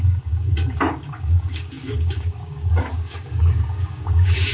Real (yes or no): no